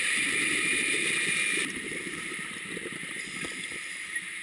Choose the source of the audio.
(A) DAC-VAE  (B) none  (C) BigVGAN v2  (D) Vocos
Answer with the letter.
C